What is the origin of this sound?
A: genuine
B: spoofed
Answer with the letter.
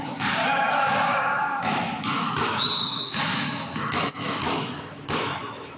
B